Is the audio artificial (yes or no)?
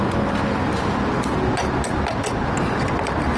no